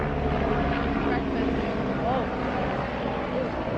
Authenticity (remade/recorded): recorded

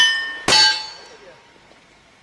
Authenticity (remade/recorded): recorded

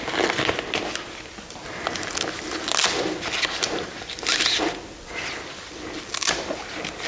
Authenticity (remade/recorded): recorded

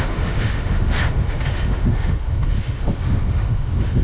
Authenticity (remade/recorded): remade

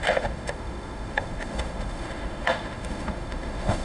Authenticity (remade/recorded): remade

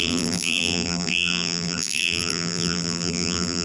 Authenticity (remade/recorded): remade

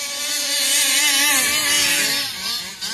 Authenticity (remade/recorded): remade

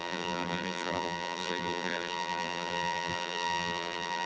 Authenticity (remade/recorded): remade